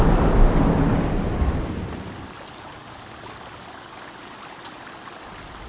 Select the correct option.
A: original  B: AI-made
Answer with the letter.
A